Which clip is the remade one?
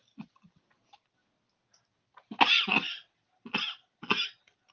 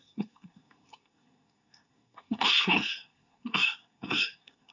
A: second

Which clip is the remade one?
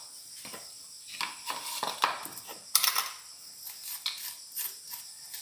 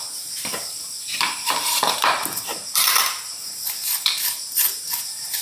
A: second